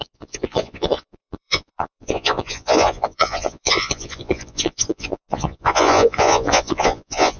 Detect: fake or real fake